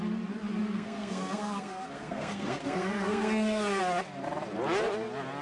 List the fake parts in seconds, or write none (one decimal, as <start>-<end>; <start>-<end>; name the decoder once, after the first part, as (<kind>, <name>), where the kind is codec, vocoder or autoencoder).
0.6-3.8 (codec, SNAC)